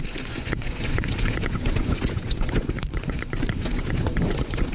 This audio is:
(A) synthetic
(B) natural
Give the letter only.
A